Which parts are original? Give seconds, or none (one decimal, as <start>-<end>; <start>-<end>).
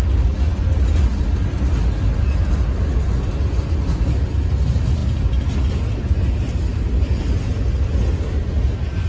0.0-9.1